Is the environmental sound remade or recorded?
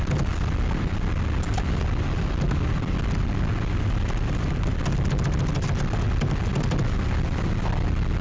recorded